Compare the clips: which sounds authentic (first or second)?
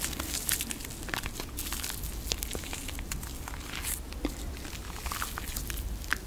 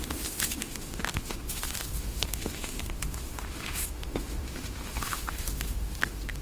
first